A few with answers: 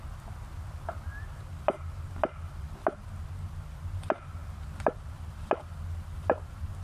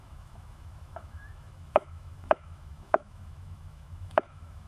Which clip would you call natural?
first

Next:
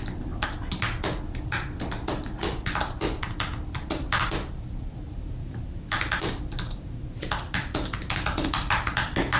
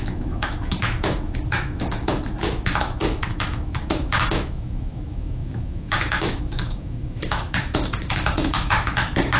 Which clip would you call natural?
first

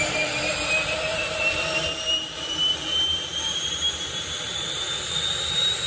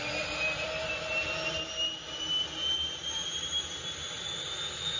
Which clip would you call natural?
second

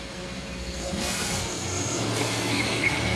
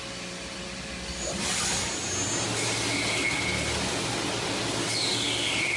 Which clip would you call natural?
second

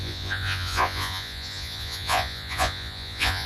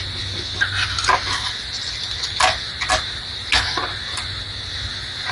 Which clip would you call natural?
second